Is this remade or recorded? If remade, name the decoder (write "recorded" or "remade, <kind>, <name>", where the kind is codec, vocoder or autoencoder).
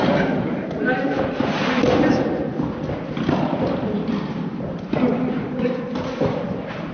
recorded